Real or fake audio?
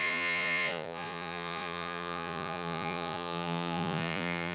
fake